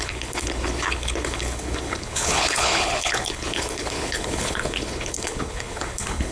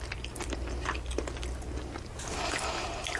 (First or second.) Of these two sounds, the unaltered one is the second